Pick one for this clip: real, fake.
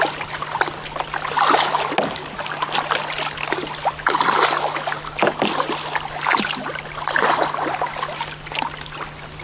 real